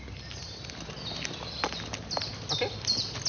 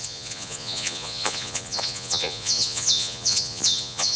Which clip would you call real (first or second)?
first